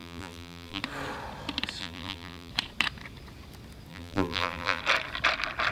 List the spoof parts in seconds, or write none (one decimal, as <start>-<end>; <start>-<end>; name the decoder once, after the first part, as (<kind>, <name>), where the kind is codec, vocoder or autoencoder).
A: 0.0-0.8 (vocoder, BigVGAN v2); 1.8-2.5; 3.9-4.8

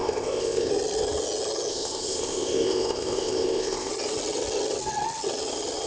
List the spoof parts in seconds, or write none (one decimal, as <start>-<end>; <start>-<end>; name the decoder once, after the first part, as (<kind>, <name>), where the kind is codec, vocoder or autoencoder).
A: 0.0-0.7 (codec, ZipCodec); 1.7-3.9

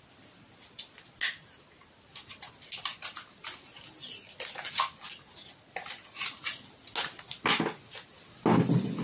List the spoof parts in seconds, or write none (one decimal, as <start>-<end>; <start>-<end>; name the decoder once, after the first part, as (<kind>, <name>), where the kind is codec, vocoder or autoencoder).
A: none

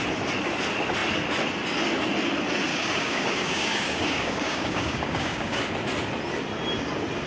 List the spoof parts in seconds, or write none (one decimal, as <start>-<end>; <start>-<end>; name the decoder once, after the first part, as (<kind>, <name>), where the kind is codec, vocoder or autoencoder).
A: 2.7-5.6 (codec, DAC)

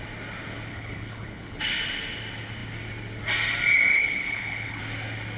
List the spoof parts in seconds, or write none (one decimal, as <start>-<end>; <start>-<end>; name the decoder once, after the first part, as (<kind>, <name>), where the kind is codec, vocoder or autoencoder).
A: 0.7-1.6 (codec, HILCodec); 3.9-4.8

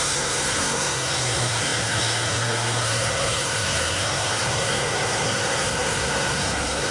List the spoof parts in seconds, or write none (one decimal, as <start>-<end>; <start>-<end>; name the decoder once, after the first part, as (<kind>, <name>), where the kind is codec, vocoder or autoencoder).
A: 0.0-6.9 (codec, SNAC)

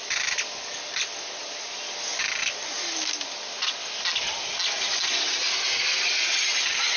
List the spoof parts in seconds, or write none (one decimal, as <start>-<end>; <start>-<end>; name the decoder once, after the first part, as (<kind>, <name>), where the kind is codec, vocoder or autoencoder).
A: none